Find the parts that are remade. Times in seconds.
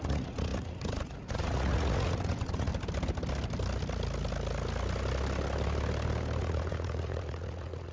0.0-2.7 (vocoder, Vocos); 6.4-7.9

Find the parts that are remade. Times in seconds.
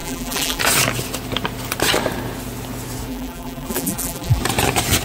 0.0-0.6 (vocoder, BigVGAN v2); 3.1-4.4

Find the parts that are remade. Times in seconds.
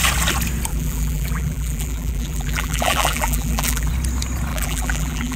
0.7-3.9 (vocoder, BigVGAN v2); 4.5-5.4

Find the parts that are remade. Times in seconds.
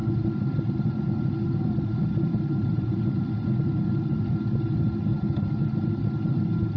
none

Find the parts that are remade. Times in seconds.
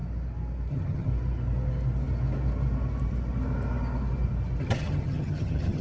0.7-1.1 (vocoder, HiFi-GAN); 4.6-5.8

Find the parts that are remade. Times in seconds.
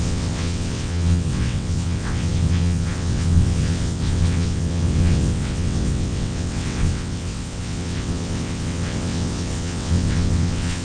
0.0-10.8 (vocoder, WaveNeXt)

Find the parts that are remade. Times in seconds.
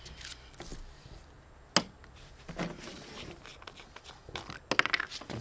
0.7-1.4 (vocoder, BigVGAN v2)